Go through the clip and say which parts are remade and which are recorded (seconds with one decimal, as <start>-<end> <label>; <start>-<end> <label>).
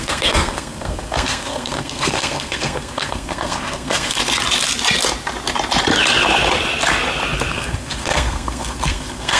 0.0-4.2 remade; 4.2-7.5 recorded; 7.5-9.4 remade